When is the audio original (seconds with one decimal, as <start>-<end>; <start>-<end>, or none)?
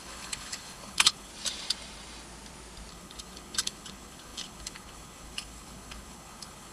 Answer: 1.3-2.9